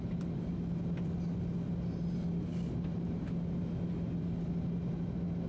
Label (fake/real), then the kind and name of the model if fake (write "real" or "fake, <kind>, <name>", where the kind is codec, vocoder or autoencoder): real